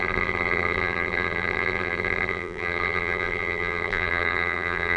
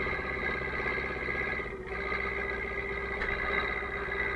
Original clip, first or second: second